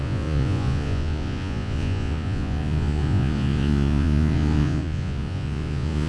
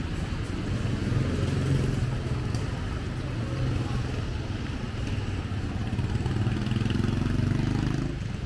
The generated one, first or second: first